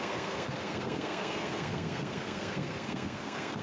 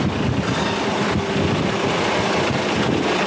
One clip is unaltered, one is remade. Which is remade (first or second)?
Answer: first